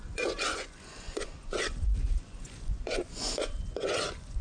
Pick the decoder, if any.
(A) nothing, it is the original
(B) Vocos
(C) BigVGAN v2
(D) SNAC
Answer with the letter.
B